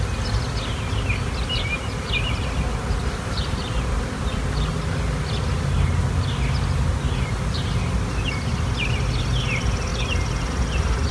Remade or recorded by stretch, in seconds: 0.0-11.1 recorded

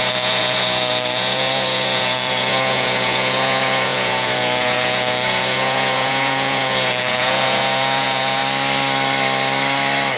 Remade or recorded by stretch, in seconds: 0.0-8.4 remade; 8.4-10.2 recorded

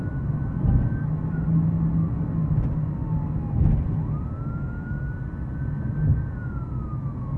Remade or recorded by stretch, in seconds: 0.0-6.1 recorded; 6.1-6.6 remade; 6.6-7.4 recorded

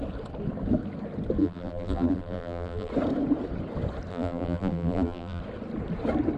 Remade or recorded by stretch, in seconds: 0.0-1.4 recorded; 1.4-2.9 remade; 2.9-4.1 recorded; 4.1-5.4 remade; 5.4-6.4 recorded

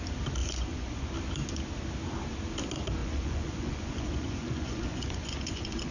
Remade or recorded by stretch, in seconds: 0.0-0.4 recorded; 0.4-1.1 remade; 1.1-3.0 recorded; 3.0-5.9 remade